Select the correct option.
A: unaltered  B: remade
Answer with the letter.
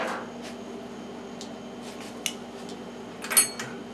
A